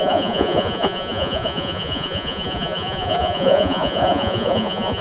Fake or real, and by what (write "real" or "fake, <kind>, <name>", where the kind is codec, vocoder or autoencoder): fake, vocoder, Vocos